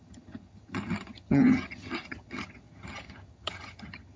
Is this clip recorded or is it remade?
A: remade